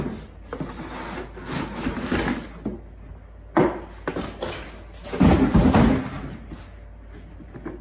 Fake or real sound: real